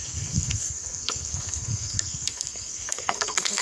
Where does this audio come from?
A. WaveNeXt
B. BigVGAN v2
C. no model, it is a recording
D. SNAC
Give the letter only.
D